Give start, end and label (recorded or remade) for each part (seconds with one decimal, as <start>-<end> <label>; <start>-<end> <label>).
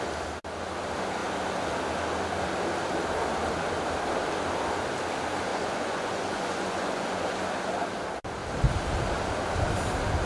0.0-5.5 recorded; 5.5-7.4 remade; 7.4-10.3 recorded